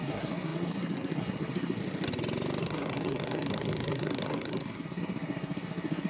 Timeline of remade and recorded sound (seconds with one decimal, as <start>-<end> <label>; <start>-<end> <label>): 0.0-1.8 remade; 1.8-2.6 recorded; 2.6-6.1 remade